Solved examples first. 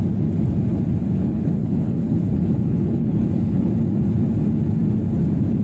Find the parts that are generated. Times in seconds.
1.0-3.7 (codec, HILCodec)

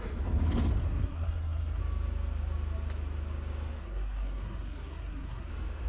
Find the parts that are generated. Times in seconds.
0.8-1.8 (codec, SNAC); 3.8-5.5